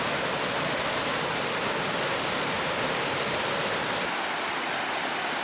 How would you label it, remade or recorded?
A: recorded